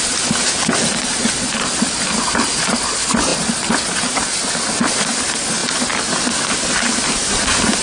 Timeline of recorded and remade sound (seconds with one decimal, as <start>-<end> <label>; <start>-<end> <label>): 0.0-7.8 recorded

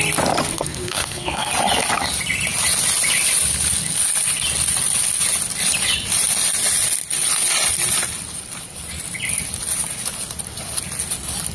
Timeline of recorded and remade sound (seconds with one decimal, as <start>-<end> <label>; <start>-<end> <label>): 0.0-0.5 recorded; 0.5-1.5 remade; 1.5-11.5 recorded